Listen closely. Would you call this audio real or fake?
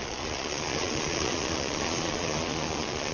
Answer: fake